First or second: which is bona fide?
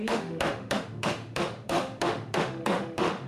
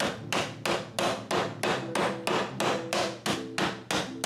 second